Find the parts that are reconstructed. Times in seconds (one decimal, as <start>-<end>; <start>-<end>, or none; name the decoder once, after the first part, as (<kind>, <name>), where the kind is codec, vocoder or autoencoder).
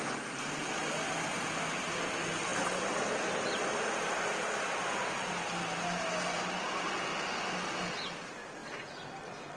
none